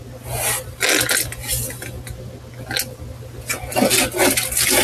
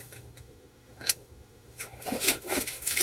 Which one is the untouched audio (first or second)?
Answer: first